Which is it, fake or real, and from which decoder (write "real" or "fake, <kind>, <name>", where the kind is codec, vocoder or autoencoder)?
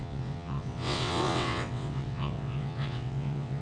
fake, vocoder, WaveNeXt